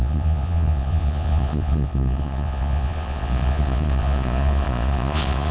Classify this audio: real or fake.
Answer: fake